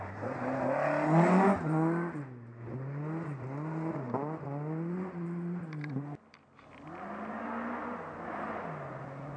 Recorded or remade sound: recorded